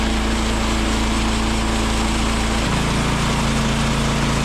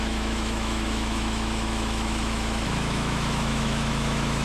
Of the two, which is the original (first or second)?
first